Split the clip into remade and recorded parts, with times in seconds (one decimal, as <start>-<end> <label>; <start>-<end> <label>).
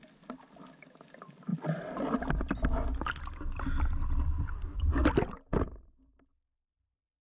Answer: 0.0-7.2 recorded